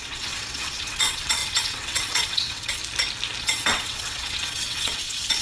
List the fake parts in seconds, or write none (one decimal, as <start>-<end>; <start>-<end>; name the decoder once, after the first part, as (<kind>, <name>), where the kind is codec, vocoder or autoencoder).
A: 0.0-2.8 (vocoder, WaveNeXt); 3.4-5.4